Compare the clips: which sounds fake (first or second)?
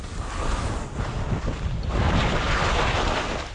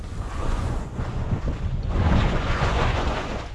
second